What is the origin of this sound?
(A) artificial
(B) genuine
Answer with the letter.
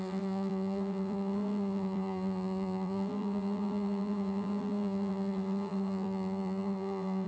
A